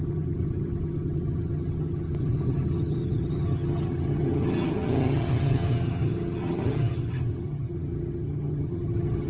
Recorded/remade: remade